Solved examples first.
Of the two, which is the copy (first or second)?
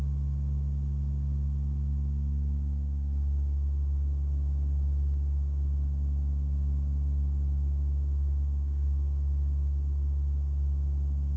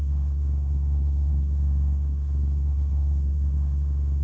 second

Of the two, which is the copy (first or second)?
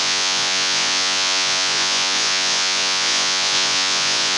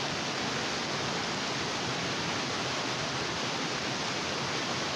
first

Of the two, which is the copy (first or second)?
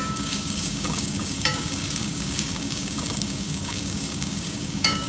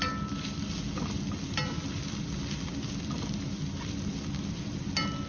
first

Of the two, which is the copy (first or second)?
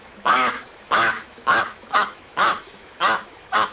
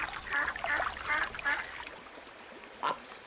first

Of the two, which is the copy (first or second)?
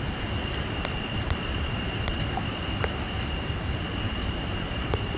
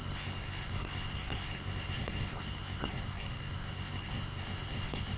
second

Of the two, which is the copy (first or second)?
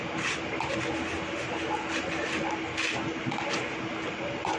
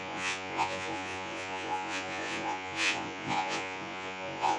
second